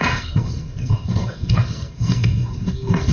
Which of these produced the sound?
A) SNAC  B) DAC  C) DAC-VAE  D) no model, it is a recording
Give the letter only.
A